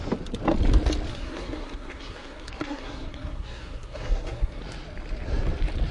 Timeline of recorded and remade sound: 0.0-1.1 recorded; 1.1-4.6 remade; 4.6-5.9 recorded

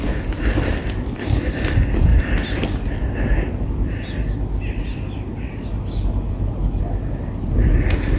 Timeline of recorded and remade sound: 0.0-8.2 recorded

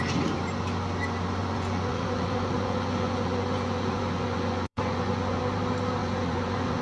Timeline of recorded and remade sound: 0.0-1.4 recorded; 1.4-5.4 remade; 5.4-6.0 recorded; 6.0-6.8 remade

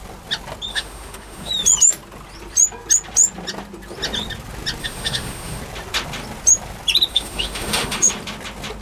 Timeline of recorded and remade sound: 0.0-0.7 recorded; 0.7-1.5 remade; 1.5-4.8 recorded; 4.8-5.6 remade; 5.6-7.1 recorded; 7.1-8.1 remade; 8.1-8.8 recorded

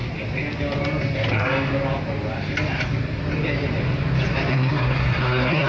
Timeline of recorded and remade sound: 0.0-4.5 recorded; 4.5-5.7 remade

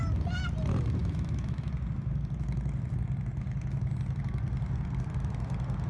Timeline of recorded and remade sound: 0.0-1.0 recorded; 1.0-1.7 remade; 1.7-5.9 recorded

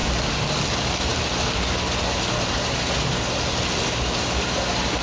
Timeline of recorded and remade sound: 0.0-5.0 recorded

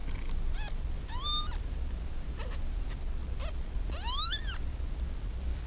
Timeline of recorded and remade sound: 0.0-5.7 recorded